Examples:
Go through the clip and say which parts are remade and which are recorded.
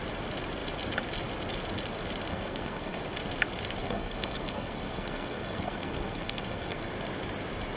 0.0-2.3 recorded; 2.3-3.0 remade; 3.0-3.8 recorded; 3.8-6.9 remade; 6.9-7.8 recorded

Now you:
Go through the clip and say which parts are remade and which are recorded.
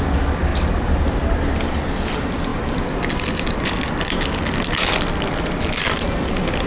0.0-6.7 recorded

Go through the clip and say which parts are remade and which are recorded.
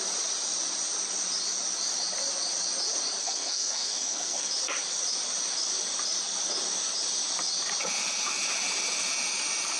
0.0-3.2 recorded; 3.2-4.5 remade; 4.5-9.8 recorded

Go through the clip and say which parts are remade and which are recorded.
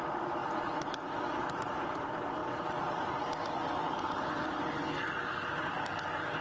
0.0-6.4 recorded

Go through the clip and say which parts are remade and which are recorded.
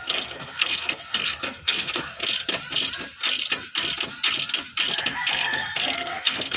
0.0-2.2 remade; 2.2-5.3 recorded; 5.3-6.6 remade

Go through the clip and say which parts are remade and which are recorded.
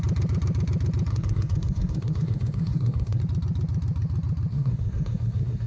0.0-1.1 recorded; 1.1-3.2 remade; 3.2-4.5 recorded; 4.5-5.7 remade